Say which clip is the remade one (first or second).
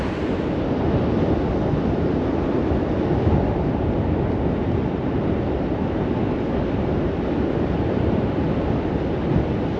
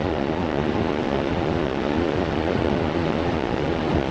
second